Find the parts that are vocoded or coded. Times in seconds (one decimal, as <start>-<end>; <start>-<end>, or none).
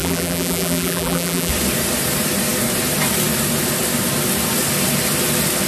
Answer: 0.0-1.5